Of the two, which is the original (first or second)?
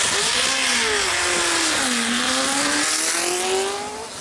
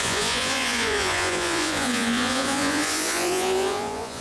first